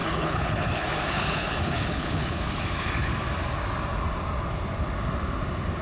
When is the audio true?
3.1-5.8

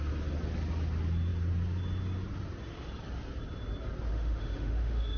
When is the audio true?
0.0-4.1

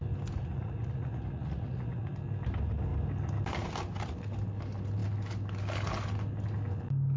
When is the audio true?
0.0-0.4; 2.1-7.2

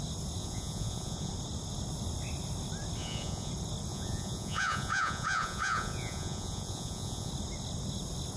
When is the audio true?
0.0-0.4; 1.3-3.0; 3.5-3.9; 7.3-8.4

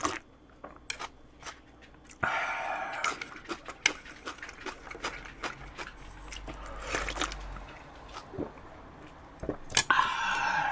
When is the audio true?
0.0-10.7

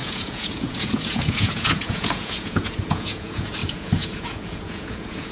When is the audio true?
none

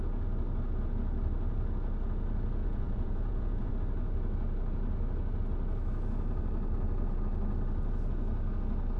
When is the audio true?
0.0-2.6; 3.7-9.0